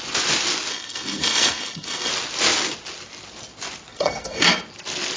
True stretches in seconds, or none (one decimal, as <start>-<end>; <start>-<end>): 0.0-0.7; 2.1-3.9; 4.5-5.2